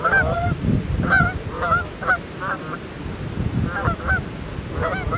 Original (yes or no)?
yes